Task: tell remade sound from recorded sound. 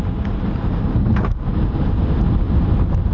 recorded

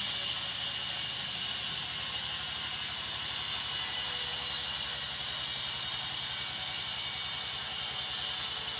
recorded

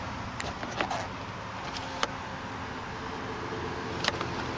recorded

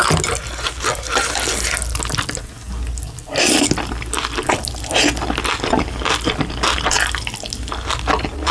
recorded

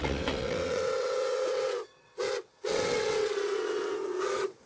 remade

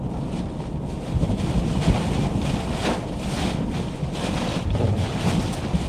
recorded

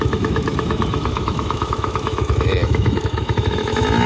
remade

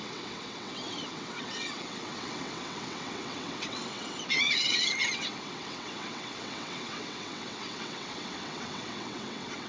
remade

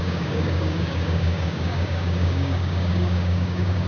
remade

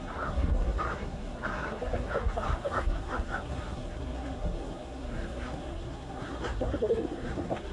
remade